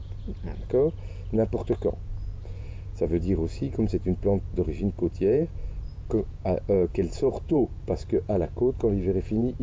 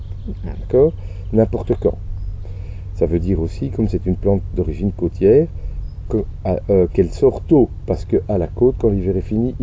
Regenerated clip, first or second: first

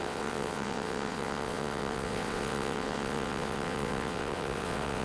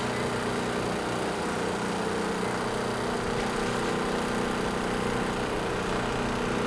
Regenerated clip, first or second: first